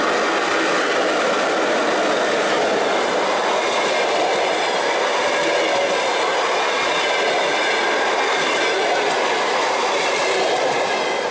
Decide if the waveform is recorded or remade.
recorded